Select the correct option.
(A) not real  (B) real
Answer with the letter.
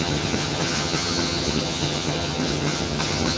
A